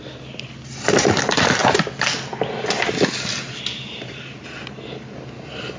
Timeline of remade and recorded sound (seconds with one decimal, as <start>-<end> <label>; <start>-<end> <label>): 0.0-5.8 recorded